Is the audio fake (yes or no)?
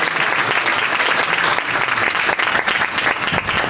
no